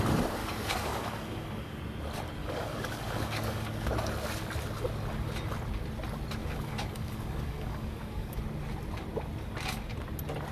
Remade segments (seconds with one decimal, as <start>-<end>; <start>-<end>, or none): 0.4-1.8; 2.4-3.9; 6.4-8.4